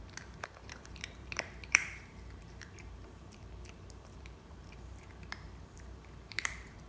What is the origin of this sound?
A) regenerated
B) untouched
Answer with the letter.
A